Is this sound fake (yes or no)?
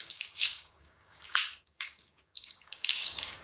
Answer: yes